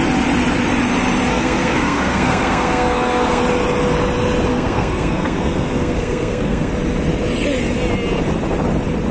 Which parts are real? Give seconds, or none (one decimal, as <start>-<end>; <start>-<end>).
0.0-1.3; 3.4-4.5; 6.7-9.1